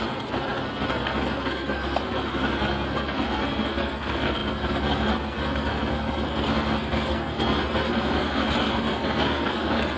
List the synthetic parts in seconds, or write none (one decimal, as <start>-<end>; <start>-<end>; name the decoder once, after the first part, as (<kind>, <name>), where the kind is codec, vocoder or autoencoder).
0.0-10.0 (codec, SNAC)